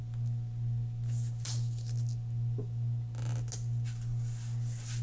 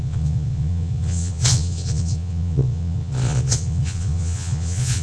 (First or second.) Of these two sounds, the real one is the first